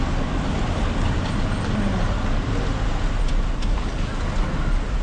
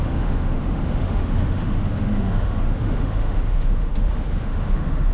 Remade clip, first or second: second